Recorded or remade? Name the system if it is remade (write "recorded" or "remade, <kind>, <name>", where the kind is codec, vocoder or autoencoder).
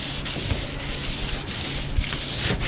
recorded